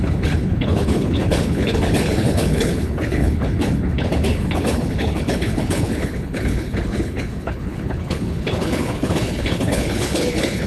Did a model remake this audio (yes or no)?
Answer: yes